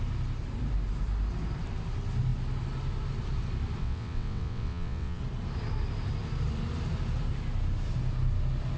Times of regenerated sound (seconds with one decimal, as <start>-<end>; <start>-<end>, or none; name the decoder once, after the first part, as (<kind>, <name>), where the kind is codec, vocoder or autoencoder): 3.8-5.2 (vocoder, WaveNeXt)